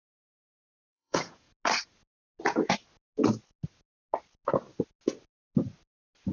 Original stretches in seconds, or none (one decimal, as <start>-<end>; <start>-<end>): 0.0-0.8; 1.5-6.3